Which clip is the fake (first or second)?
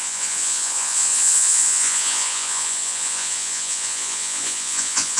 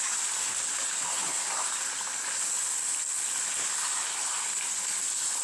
first